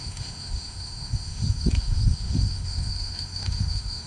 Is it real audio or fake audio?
fake